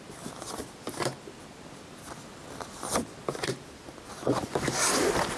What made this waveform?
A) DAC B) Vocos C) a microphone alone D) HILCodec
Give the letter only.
C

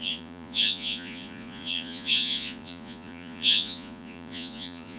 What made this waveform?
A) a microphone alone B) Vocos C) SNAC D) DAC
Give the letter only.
B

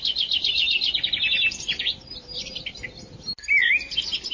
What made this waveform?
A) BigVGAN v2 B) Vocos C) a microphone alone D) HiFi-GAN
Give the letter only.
C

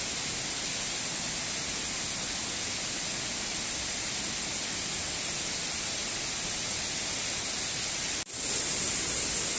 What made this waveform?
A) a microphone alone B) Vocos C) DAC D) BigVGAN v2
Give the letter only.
A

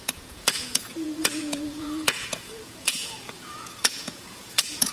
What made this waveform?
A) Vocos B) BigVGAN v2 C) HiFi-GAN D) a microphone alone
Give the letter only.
A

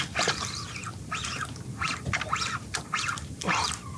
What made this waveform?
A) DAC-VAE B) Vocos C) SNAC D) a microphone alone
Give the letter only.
D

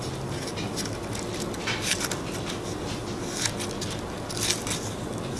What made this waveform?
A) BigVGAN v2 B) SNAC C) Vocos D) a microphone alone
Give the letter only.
D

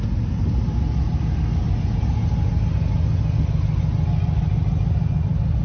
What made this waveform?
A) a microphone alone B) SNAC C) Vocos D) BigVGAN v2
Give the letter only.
A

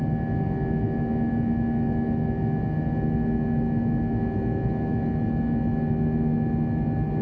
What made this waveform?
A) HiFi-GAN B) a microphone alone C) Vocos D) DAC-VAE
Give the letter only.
B